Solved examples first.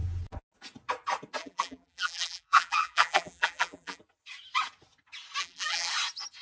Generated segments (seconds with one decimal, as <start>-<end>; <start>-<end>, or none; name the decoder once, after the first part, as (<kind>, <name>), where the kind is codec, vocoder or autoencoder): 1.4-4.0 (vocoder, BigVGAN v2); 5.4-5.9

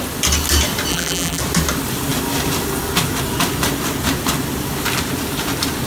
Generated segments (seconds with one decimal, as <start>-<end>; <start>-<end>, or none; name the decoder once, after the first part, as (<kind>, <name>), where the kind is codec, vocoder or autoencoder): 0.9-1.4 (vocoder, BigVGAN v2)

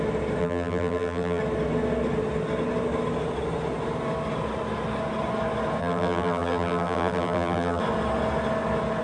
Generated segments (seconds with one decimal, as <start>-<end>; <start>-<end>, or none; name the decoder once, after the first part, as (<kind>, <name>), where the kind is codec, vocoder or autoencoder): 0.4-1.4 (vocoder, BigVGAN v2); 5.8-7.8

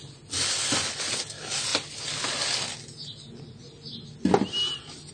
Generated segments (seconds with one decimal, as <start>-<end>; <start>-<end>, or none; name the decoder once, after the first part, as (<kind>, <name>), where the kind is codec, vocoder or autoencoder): none

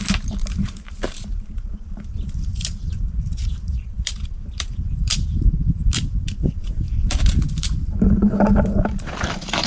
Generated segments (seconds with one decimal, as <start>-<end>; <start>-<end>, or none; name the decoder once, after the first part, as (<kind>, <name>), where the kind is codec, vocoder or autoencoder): 0.0-9.7 (vocoder, BigVGAN v2)

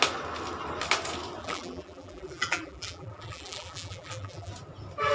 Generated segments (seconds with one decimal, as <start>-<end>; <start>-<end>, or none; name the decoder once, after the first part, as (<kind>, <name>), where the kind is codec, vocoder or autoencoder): 1.4-4.5 (vocoder, BigVGAN v2)

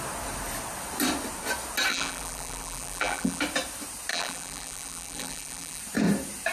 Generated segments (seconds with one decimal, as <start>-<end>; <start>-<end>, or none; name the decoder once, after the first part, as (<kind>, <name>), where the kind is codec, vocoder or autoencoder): 1.9-3.4 (vocoder, BigVGAN v2); 4.1-5.8